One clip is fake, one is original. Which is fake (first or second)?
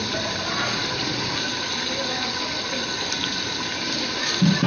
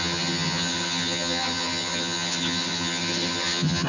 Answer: second